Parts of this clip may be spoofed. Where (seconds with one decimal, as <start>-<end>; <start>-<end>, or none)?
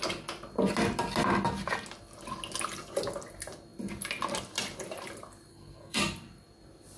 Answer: 5.5-6.0